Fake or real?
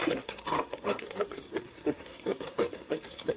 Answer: fake